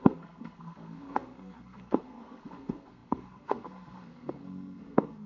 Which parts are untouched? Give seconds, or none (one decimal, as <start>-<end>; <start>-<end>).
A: none